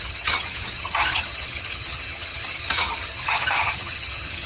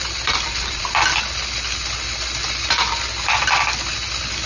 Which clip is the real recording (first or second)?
second